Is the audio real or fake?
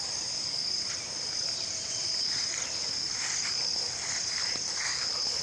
real